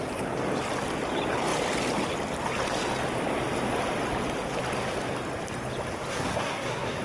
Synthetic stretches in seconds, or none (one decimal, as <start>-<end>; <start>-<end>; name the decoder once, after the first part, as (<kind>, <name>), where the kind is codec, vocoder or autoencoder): 6.1-7.0 (codec, SNAC)